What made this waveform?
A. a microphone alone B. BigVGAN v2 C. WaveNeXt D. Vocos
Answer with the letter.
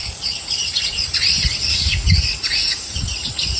D